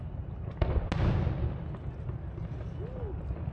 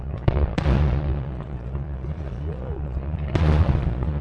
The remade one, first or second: second